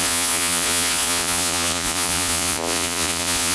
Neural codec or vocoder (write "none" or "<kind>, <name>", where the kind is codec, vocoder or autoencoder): vocoder, Vocos